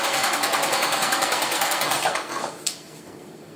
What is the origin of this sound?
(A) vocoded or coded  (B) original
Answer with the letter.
A